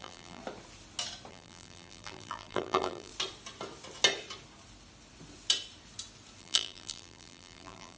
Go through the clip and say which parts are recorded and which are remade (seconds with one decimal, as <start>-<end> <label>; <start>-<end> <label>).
0.0-0.4 remade; 0.4-1.3 recorded; 1.3-3.1 remade; 3.1-6.4 recorded; 6.4-8.0 remade